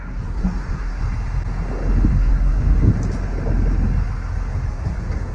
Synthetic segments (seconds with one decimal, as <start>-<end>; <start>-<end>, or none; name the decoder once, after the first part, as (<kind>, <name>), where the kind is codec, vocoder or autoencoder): 0.0-1.0 (codec, SNAC); 2.1-2.9; 4.7-5.3